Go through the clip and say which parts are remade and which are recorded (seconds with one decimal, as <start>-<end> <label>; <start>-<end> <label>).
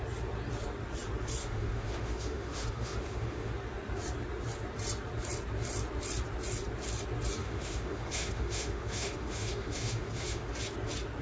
0.0-1.4 recorded; 1.4-3.5 remade; 3.5-7.4 recorded; 7.4-10.5 remade; 10.5-11.2 recorded